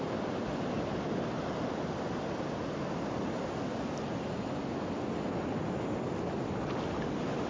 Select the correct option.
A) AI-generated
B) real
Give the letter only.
B